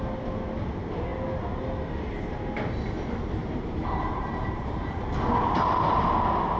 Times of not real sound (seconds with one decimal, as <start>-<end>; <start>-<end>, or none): 3.4-4.9